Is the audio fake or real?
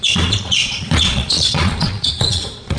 fake